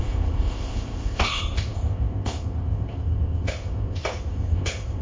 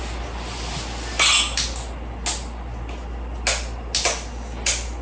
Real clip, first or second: second